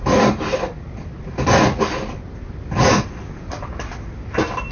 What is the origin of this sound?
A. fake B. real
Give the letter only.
B